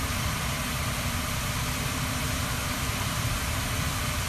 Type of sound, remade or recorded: remade